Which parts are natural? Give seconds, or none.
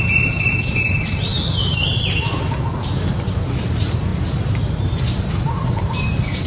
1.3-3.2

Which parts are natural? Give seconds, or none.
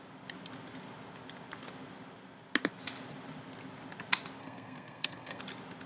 0.0-4.4; 5.4-5.9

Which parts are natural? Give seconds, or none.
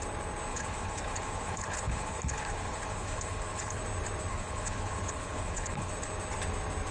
0.0-0.5; 3.8-4.3; 5.9-6.9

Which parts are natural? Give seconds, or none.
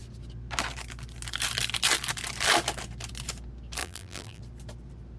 0.0-3.8; 4.4-5.2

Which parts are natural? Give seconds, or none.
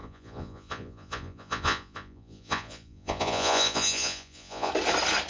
4.7-5.3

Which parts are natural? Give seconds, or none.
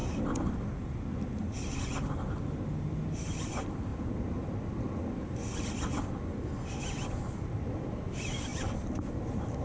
0.0-9.6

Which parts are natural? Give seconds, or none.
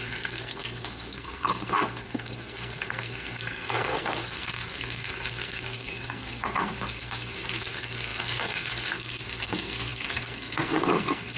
none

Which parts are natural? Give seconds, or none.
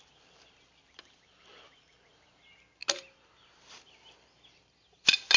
0.0-5.4